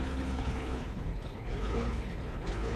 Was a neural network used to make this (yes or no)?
yes